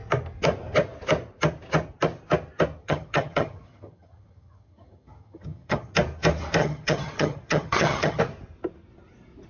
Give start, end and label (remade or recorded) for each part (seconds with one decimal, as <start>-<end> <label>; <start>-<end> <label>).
0.0-2.8 recorded; 2.8-5.9 remade; 5.9-6.6 recorded; 6.6-8.2 remade; 8.2-9.5 recorded